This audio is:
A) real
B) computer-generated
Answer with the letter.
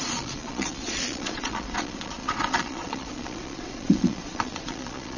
B